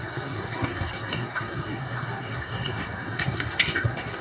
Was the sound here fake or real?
fake